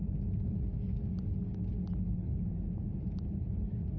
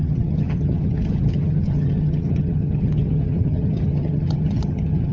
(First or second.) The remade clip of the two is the second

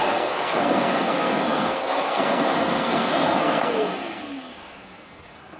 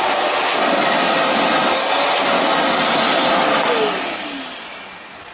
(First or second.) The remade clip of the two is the first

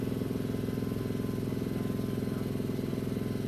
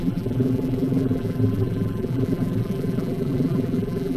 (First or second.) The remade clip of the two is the second